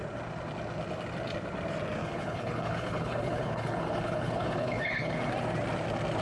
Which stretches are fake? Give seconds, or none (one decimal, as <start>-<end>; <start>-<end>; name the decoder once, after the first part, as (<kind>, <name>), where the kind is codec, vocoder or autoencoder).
2.0-5.1 (codec, HILCodec)